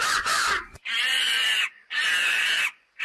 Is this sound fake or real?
fake